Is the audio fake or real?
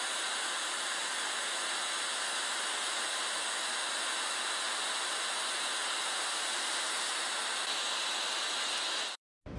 real